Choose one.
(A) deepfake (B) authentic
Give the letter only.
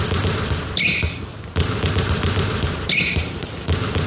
B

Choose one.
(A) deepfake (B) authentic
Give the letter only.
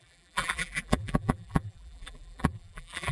A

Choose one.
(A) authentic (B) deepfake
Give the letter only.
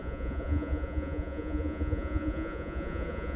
B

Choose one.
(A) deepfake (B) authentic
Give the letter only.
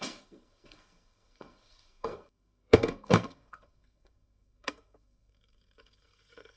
A